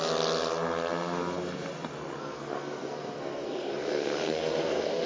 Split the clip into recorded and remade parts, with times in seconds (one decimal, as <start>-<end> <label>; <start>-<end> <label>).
0.0-2.2 recorded; 2.2-5.1 remade